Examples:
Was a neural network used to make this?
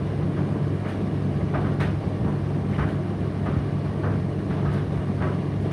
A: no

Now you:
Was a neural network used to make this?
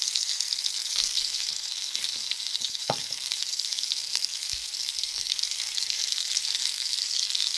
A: yes